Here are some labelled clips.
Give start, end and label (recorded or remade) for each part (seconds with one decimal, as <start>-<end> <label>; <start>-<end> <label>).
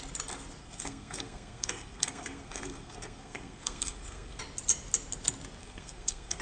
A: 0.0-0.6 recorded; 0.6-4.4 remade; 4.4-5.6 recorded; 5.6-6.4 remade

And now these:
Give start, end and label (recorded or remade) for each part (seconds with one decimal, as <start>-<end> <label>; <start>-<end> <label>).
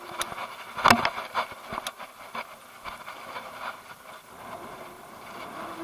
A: 0.0-5.8 recorded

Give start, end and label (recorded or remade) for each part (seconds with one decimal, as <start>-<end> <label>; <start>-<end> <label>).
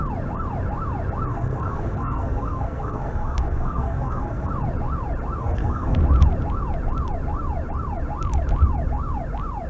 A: 0.0-1.3 recorded; 1.3-4.5 remade; 4.5-5.4 recorded; 5.4-6.0 remade; 6.0-9.7 recorded